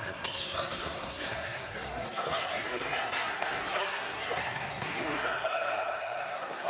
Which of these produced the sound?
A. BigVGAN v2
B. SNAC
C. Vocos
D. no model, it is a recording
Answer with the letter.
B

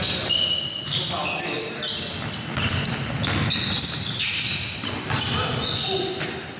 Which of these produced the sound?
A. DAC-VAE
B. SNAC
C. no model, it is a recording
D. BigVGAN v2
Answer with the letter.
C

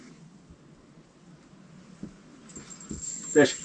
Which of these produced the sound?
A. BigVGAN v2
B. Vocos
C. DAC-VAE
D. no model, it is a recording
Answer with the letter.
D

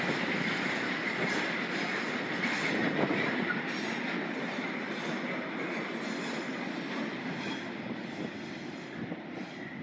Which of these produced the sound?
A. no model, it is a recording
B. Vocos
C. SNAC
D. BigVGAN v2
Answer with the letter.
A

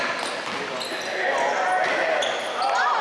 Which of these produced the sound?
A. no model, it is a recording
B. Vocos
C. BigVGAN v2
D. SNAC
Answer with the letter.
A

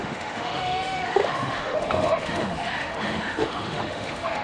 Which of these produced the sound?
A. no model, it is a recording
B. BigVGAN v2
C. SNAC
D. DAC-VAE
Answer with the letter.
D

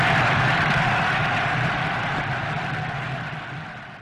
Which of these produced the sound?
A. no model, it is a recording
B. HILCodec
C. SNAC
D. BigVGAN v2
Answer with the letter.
A